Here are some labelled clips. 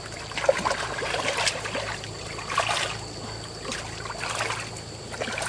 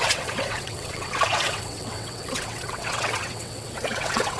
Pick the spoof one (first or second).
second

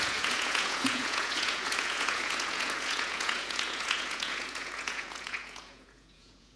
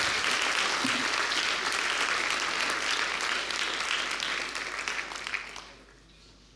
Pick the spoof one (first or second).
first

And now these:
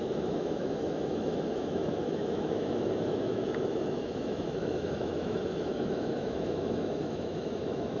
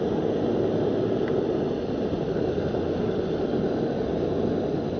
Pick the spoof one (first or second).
first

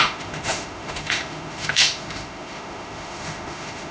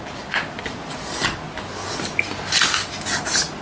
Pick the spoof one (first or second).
first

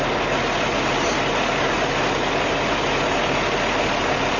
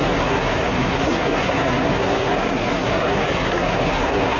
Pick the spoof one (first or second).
second